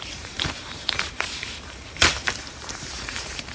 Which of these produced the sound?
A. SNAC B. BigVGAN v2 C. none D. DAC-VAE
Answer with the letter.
B